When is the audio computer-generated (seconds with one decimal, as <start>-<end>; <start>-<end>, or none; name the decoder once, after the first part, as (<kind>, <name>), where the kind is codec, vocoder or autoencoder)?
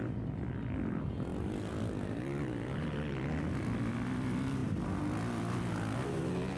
none